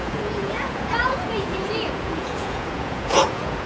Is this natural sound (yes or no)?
no